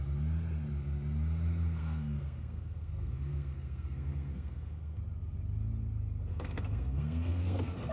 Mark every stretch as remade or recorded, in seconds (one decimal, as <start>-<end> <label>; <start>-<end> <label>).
0.0-1.8 recorded; 1.8-5.0 remade; 5.0-6.3 recorded; 6.3-7.9 remade